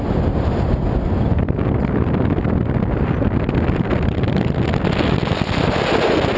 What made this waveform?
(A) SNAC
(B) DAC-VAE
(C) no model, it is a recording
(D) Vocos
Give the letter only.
C